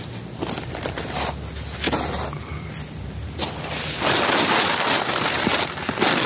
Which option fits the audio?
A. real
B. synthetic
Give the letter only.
A